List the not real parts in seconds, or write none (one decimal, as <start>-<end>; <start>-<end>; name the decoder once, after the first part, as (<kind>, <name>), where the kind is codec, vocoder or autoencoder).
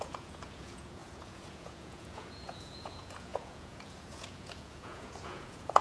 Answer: 0.0-5.8 (vocoder, Vocos)